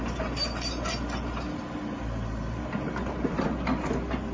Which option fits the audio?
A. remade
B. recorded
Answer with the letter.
B